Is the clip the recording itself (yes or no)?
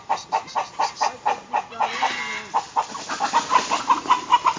yes